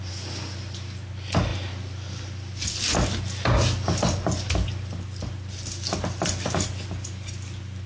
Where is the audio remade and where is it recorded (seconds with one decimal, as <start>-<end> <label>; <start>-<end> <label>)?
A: 0.0-7.9 recorded